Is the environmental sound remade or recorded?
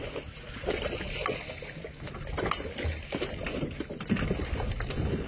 recorded